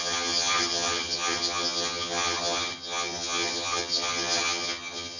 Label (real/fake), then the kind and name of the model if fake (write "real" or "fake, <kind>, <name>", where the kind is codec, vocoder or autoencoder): fake, vocoder, HiFi-GAN